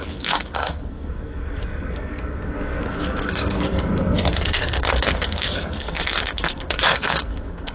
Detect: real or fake fake